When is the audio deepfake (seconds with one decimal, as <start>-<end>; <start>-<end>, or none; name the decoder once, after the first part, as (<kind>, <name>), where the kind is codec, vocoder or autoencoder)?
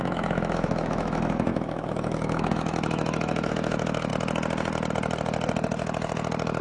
0.0-4.1 (autoencoder, DAC-VAE)